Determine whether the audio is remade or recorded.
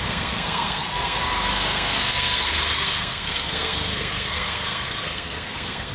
remade